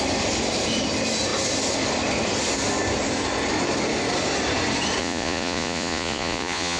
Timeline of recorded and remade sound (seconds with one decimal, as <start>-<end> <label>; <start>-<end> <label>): 0.0-5.0 recorded; 5.0-6.8 remade

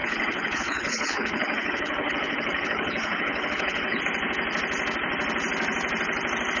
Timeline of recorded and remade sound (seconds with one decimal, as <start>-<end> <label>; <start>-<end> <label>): 0.0-4.0 remade; 4.0-6.6 recorded

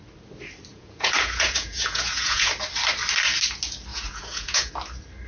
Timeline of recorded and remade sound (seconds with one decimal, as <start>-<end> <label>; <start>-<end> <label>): 0.0-0.7 recorded; 0.7-2.5 remade; 2.5-3.9 recorded; 3.9-4.7 remade; 4.7-5.3 recorded

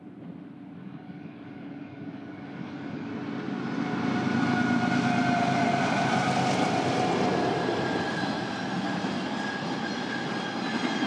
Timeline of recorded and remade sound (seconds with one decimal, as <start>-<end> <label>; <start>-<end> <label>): 0.0-0.8 recorded; 0.8-3.1 remade; 3.1-11.1 recorded

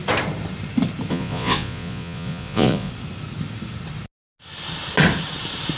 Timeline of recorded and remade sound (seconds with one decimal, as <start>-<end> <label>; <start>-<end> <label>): 0.0-1.1 recorded; 1.1-2.9 remade; 2.9-5.8 recorded

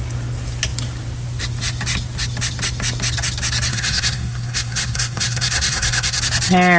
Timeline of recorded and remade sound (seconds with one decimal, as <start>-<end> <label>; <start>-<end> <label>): 0.0-3.7 recorded; 3.7-6.2 remade; 6.2-6.8 recorded